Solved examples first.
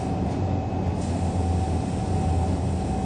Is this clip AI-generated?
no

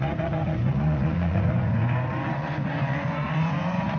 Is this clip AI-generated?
yes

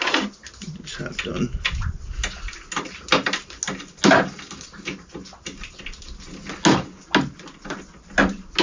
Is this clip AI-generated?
no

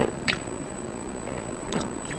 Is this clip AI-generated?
yes